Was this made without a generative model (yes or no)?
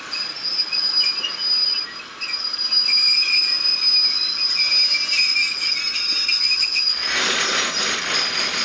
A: yes